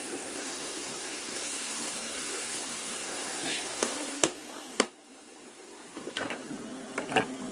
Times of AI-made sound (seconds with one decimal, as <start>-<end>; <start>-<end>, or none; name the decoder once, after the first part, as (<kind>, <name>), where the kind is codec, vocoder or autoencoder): 0.0-6.4 (codec, SNAC)